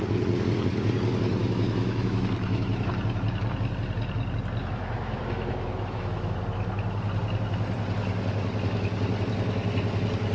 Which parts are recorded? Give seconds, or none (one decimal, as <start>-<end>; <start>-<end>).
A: 0.0-1.4; 2.9-4.6; 6.4-10.3